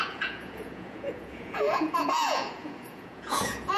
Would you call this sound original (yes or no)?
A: no